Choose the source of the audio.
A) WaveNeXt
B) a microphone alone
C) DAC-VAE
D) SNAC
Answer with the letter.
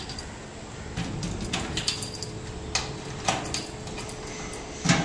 B